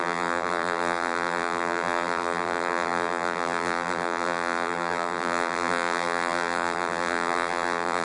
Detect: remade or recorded remade